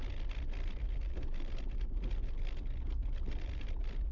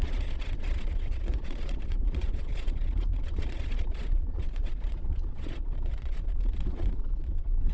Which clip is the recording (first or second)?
first